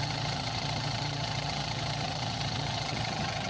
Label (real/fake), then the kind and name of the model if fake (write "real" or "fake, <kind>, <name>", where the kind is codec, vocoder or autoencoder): fake, vocoder, HiFi-GAN